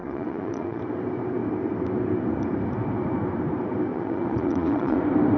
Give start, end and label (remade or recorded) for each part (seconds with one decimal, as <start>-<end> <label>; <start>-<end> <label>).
0.0-0.8 remade; 0.8-3.9 recorded; 3.9-5.0 remade; 5.0-5.4 recorded